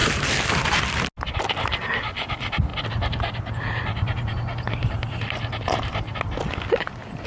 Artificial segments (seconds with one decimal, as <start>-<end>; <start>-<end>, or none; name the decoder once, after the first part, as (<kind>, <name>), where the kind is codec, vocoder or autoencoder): 0.0-0.8 (vocoder, BigVGAN v2); 2.7-6.2